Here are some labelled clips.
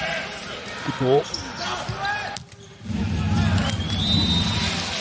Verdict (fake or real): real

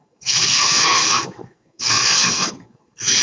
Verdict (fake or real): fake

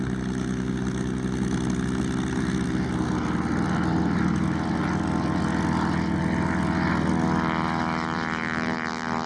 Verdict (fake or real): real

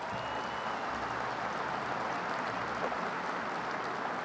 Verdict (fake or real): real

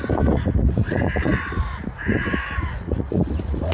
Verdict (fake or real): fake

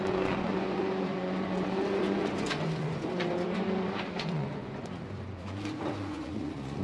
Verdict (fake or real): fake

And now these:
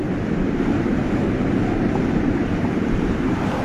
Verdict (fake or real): fake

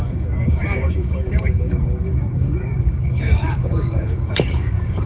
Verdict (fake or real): fake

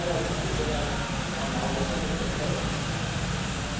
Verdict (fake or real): real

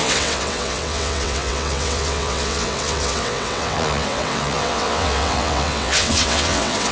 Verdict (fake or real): fake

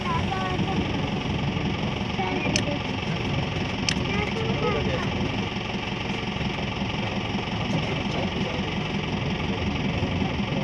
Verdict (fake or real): real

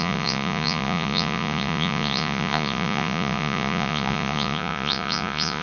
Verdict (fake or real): fake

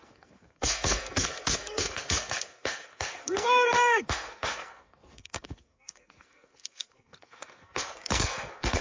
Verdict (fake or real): fake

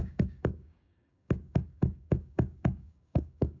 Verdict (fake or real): fake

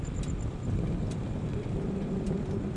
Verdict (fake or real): fake